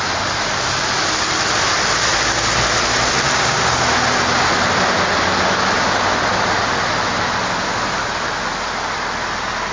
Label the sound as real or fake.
real